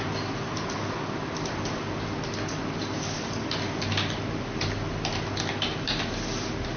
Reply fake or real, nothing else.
real